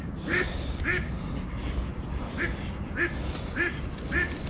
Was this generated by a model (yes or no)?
no